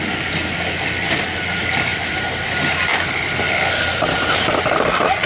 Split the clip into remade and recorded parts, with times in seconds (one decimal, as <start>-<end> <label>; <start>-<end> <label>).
0.0-1.9 recorded; 1.9-2.5 remade; 2.5-5.3 recorded